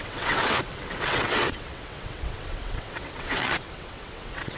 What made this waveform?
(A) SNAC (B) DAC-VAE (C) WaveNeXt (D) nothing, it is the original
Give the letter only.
C